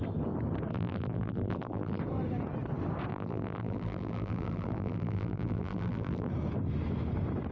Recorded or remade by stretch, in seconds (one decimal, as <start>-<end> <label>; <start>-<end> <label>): 0.0-0.7 recorded; 0.7-2.0 remade; 2.0-3.1 recorded; 3.1-6.3 remade; 6.3-7.5 recorded